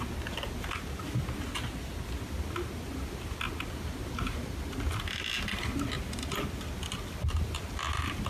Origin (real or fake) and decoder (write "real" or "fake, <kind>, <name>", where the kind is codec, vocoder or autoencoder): real